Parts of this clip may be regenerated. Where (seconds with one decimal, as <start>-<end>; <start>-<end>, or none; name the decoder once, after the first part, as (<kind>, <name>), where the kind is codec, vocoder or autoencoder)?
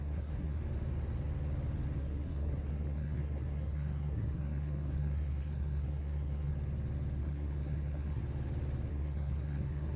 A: 0.0-0.6 (codec, SNAC); 2.0-6.5; 7.2-8.2; 8.9-10.0